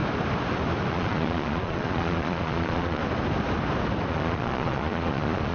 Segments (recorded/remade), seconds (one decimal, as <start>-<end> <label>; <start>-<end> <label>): 0.0-0.9 recorded; 0.9-3.0 remade; 3.0-4.1 recorded; 4.1-5.5 remade

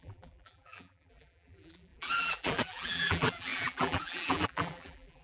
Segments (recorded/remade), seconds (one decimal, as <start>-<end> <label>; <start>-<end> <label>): 0.0-5.2 remade

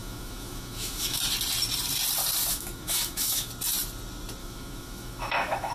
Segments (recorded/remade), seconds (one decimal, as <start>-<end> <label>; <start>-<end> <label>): 0.0-1.2 remade; 1.2-2.5 recorded; 2.5-3.5 remade; 3.5-4.4 recorded; 4.4-5.7 remade